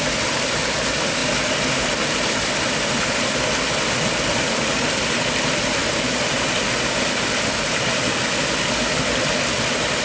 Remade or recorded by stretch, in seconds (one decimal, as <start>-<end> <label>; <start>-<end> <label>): 0.0-10.0 recorded